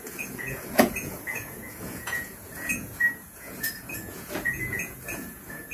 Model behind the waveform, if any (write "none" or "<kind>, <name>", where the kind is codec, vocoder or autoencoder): vocoder, Vocos